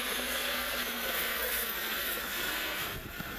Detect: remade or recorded remade